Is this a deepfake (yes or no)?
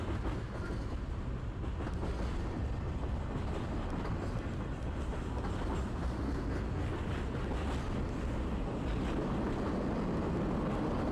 no